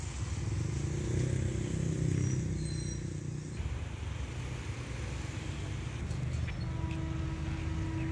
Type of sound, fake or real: real